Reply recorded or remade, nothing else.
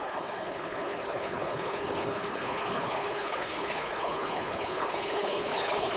remade